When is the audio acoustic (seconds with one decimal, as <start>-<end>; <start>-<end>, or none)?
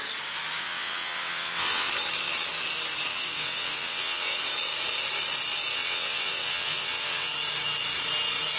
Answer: 0.0-0.6; 1.9-3.1; 4.4-5.7; 7.3-8.6